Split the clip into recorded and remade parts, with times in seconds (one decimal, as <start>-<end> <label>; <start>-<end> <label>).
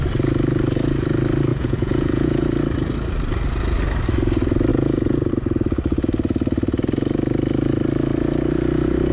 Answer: 0.0-1.5 recorded; 1.5-2.4 remade; 2.4-4.7 recorded; 4.7-5.3 remade; 5.3-9.1 recorded